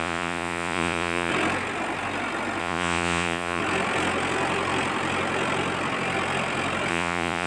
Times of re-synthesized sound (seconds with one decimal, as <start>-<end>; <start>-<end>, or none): 0.0-1.3; 2.6-3.6; 6.9-7.5